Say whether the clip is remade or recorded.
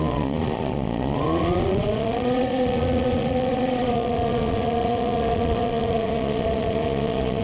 remade